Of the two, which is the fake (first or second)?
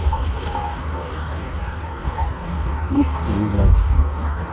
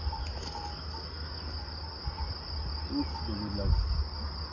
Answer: first